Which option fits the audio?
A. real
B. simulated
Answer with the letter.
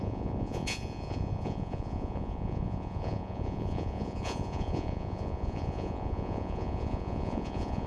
B